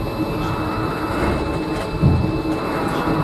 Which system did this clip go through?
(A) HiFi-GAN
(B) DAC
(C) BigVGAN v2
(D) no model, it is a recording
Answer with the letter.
D